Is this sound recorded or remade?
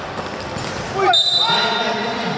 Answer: recorded